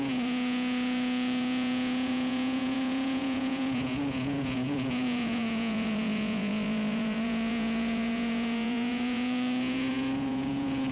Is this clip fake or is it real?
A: fake